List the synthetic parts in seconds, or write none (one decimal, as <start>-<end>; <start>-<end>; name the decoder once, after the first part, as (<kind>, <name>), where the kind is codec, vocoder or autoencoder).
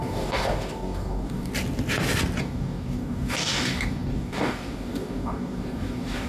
0.0-1.5 (codec, DAC); 2.4-6.3